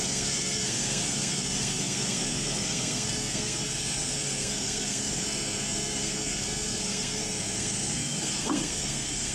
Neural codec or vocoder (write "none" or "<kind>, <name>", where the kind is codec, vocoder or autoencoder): codec, SNAC